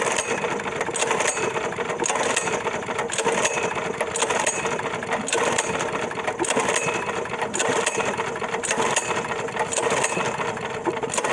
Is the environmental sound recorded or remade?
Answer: recorded